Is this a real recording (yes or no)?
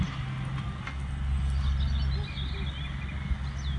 yes